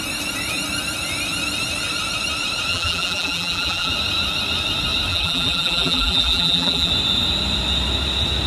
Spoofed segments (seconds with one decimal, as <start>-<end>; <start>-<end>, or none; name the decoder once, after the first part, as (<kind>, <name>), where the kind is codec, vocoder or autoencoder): 2.7-3.9 (vocoder, BigVGAN v2); 5.1-6.9